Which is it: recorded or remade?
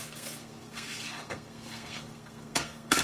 remade